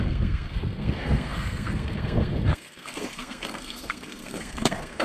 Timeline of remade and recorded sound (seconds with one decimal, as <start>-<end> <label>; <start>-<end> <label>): 0.0-5.0 remade